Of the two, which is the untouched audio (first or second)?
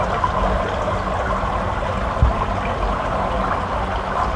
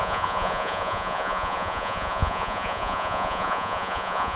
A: first